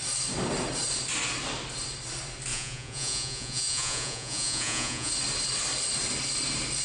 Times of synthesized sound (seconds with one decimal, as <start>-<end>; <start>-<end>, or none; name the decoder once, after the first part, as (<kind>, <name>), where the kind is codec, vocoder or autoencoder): 2.5-5.1 (vocoder, Vocos)